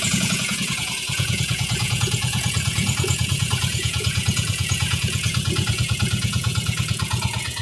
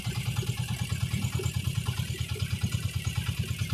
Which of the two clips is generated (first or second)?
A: first